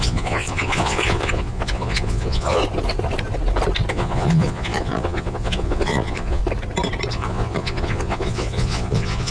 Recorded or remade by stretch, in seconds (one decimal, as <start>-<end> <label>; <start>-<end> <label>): 0.0-2.6 remade; 2.6-3.9 recorded; 3.9-6.4 remade; 6.4-7.1 recorded; 7.1-9.3 remade